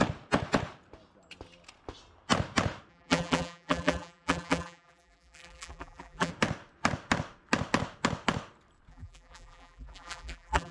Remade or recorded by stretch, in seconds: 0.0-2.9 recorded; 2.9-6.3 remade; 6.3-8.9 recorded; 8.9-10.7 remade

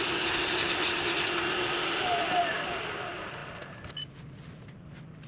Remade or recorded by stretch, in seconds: 0.0-5.3 recorded

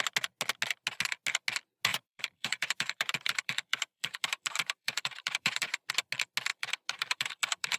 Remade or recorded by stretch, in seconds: 0.0-1.9 recorded; 1.9-5.9 remade; 5.9-6.5 recorded; 6.5-7.8 remade

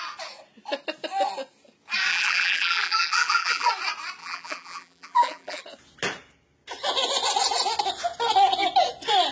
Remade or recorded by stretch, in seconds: 0.0-2.1 recorded; 2.1-3.7 remade; 3.7-4.2 recorded; 4.2-5.6 remade; 5.6-9.3 recorded